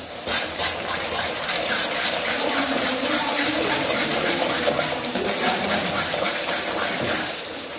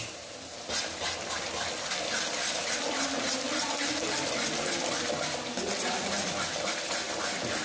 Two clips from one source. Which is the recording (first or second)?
second